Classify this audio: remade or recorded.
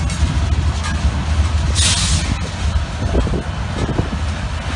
recorded